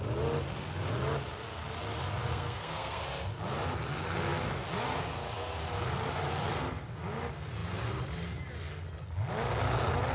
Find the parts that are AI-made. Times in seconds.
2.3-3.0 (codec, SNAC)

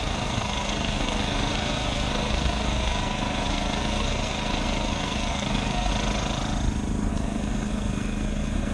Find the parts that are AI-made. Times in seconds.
0.0-5.9 (codec, SNAC); 7.1-8.7